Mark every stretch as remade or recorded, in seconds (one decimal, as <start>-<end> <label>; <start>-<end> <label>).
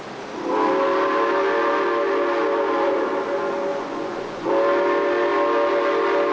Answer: 0.0-3.7 recorded; 3.7-4.5 remade; 4.5-6.3 recorded